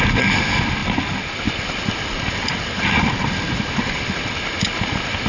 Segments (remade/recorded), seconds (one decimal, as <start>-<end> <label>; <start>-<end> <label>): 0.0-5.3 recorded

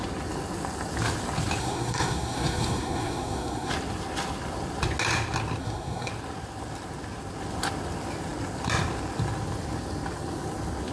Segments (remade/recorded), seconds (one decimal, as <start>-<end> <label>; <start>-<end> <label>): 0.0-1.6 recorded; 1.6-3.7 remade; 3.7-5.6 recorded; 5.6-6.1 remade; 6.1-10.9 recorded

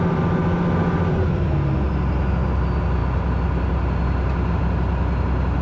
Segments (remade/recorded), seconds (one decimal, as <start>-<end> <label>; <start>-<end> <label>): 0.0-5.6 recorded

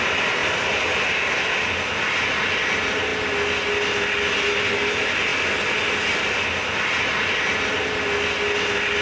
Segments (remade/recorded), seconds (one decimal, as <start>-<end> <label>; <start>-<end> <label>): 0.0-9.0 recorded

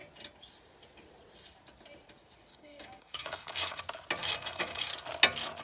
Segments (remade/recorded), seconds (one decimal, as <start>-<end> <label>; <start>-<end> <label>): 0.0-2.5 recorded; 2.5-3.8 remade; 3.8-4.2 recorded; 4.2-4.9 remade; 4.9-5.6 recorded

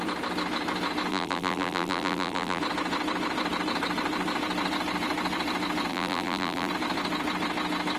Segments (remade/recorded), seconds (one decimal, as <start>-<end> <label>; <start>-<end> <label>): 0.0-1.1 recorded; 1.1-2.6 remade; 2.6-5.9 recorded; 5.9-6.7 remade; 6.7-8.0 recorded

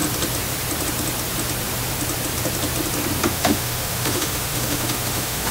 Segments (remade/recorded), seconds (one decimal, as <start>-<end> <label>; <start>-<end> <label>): 0.0-3.3 recorded; 3.3-5.5 remade

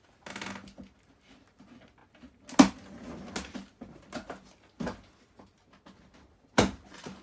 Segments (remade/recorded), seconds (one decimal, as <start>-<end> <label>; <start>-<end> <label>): 0.0-7.2 recorded